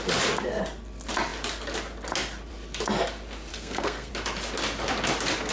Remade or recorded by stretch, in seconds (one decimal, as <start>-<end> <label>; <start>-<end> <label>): 0.0-3.5 recorded; 3.5-4.1 remade; 4.1-5.5 recorded